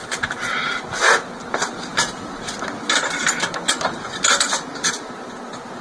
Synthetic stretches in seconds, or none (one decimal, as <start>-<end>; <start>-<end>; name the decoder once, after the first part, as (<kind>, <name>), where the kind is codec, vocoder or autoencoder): none